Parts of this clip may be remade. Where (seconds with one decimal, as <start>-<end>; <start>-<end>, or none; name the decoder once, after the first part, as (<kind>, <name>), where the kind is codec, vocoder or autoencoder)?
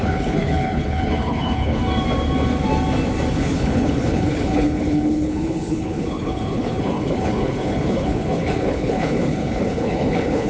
0.0-1.8 (codec, HILCodec); 3.3-10.5